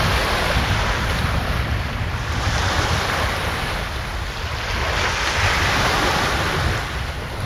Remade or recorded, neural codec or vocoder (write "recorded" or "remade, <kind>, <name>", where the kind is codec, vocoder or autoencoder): recorded